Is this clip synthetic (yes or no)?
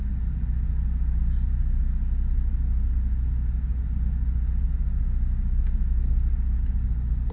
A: no